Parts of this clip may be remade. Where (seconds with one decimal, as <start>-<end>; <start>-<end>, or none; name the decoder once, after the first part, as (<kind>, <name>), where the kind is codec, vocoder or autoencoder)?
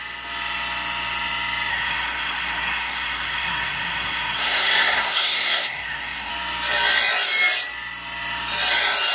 1.7-6.3 (codec, SNAC)